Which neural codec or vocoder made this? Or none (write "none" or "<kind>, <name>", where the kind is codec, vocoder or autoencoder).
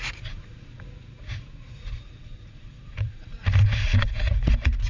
vocoder, Vocos